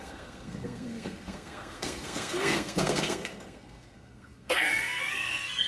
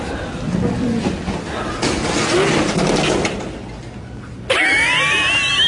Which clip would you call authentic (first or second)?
second